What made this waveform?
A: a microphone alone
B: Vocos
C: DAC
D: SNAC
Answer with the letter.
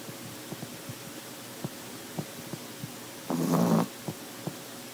A